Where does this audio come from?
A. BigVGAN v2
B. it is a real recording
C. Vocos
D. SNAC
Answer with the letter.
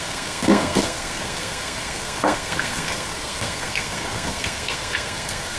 D